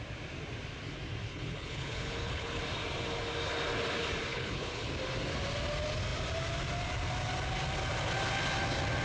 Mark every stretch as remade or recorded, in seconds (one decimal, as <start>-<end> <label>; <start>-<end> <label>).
0.0-1.2 recorded; 1.2-2.6 remade; 2.6-4.3 recorded; 4.3-4.9 remade; 4.9-9.0 recorded